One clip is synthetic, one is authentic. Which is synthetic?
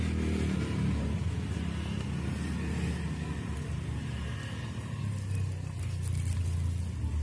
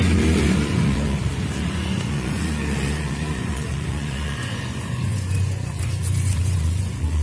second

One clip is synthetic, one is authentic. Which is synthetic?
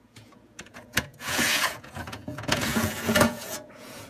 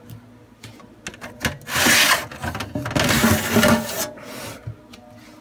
first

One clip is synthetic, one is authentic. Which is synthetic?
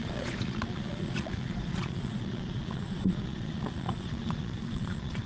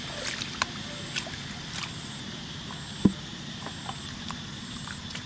first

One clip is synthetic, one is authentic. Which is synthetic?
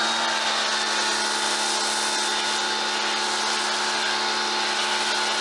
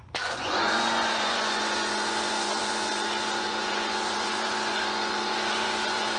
second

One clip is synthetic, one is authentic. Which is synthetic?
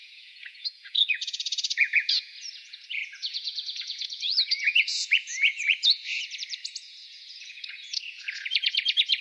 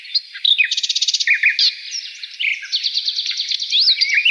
first